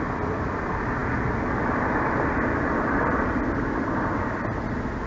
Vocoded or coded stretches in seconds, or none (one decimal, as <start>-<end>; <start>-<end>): none